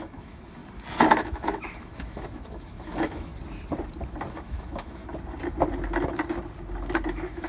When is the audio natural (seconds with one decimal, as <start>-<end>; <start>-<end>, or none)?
0.6-1.1; 3.3-4.3; 5.0-7.1